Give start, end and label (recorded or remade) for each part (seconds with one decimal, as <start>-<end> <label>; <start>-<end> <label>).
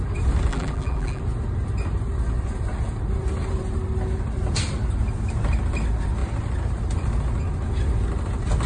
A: 0.0-0.5 recorded; 0.5-1.2 remade; 1.2-8.7 recorded